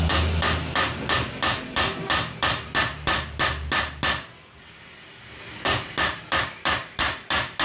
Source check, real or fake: real